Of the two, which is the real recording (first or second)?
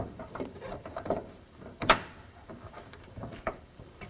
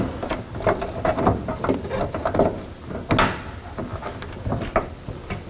second